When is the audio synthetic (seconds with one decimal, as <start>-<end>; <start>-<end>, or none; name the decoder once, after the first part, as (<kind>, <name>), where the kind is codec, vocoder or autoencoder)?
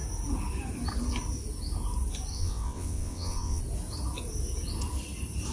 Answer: 2.3-3.6 (vocoder, WaveNeXt)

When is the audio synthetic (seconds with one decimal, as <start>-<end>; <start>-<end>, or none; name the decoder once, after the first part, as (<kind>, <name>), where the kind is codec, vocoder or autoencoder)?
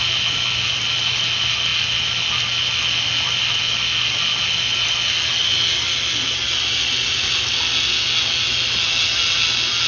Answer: none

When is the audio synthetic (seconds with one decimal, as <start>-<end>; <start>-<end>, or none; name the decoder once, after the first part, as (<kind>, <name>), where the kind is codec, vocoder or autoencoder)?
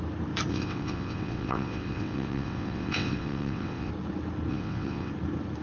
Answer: 0.5-3.9 (vocoder, WaveNeXt); 4.5-5.1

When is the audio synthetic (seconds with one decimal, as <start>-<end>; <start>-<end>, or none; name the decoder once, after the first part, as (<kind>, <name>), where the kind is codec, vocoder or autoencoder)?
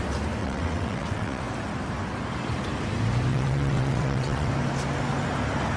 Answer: 0.4-1.4 (vocoder, WaveNeXt); 3.3-4.5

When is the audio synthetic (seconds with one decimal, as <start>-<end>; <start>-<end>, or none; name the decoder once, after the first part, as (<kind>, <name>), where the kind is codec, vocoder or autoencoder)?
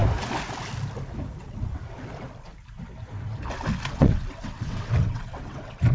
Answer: 1.4-1.8 (vocoder, WaveNeXt); 3.9-5.9